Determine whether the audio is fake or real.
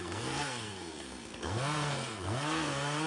fake